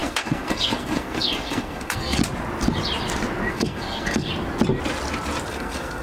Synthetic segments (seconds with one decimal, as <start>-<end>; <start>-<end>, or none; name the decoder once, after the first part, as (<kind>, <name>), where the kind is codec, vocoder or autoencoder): 0.0-2.2 (codec, SNAC); 3.5-4.3; 5.5-6.0